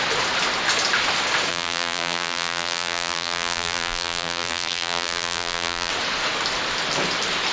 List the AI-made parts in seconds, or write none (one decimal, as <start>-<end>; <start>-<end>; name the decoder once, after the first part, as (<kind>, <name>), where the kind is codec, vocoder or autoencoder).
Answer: 1.5-5.9 (vocoder, BigVGAN v2)